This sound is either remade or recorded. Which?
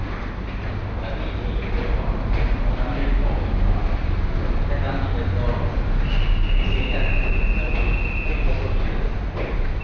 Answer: recorded